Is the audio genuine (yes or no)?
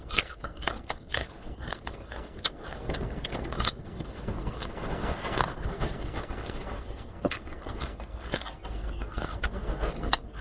no